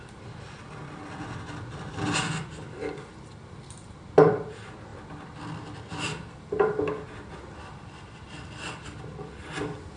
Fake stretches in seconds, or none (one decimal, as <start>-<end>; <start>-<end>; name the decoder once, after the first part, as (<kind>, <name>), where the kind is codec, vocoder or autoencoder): none